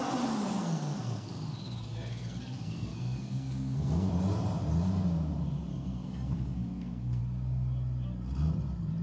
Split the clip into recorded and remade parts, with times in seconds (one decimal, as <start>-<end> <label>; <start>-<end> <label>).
0.0-0.5 recorded; 0.5-4.1 remade; 4.1-5.7 recorded; 5.7-7.2 remade; 7.2-9.0 recorded